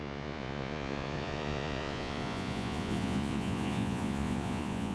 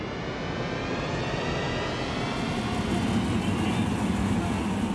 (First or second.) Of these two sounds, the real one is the second